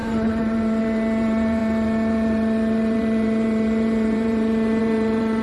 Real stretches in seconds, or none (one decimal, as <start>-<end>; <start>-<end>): none